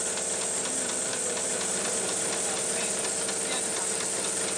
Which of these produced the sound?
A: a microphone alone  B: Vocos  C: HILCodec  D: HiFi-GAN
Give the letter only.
A